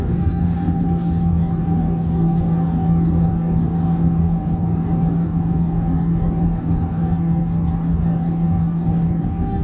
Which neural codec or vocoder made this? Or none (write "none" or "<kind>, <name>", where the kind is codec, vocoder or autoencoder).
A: codec, DAC